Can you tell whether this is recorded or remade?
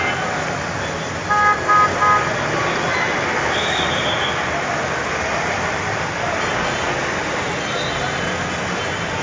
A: recorded